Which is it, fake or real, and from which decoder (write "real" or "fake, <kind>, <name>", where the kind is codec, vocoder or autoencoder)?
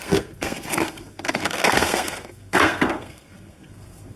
fake, codec, SNAC